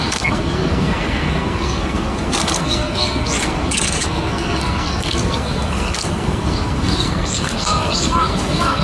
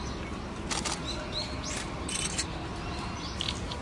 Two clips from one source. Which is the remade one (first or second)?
first